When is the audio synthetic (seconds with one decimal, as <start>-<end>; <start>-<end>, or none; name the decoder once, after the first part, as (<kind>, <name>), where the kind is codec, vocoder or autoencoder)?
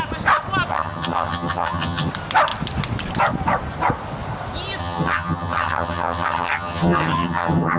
0.7-2.1 (vocoder, HiFi-GAN); 4.8-7.8